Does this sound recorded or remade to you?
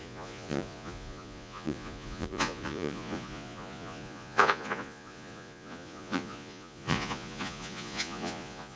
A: remade